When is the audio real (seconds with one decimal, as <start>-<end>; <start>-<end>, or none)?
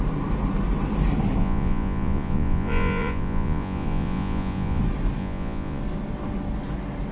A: 0.0-1.4; 4.8-5.2; 5.8-7.1